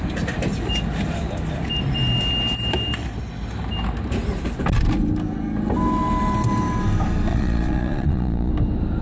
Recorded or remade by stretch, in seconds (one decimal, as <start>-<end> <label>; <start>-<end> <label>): 0.0-7.3 recorded; 7.3-8.5 remade; 8.5-9.0 recorded